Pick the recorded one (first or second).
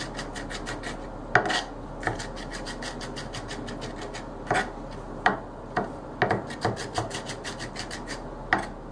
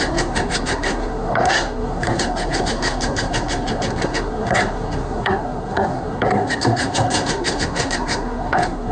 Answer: first